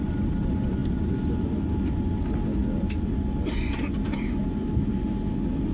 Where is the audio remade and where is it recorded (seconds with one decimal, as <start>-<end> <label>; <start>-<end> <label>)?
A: 0.0-2.6 recorded; 2.6-3.8 remade; 3.8-5.7 recorded